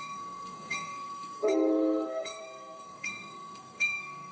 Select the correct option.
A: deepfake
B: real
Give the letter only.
A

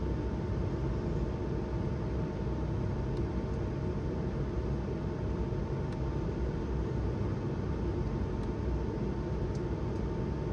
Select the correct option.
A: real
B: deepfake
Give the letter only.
A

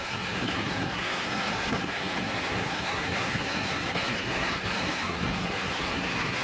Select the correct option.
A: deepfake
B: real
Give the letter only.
A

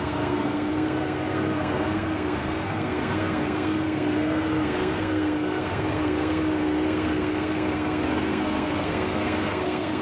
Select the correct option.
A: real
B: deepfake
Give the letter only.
B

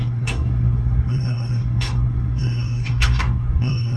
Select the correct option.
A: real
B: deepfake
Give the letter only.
B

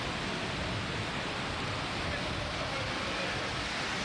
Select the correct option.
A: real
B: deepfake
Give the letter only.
A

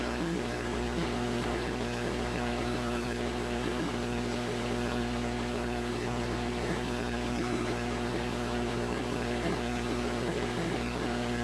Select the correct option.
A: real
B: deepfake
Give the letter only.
B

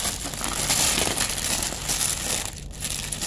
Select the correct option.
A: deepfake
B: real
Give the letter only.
B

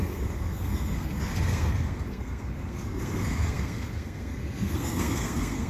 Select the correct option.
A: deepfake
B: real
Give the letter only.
A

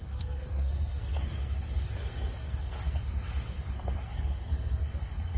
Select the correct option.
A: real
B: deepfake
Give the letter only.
B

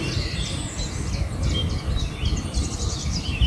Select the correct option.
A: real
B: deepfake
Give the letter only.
A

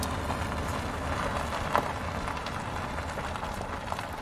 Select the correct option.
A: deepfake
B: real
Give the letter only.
B